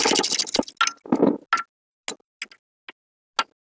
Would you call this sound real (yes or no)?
yes